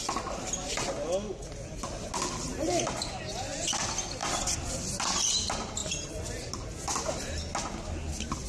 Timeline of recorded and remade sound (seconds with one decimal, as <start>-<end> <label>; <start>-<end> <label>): 0.0-8.5 recorded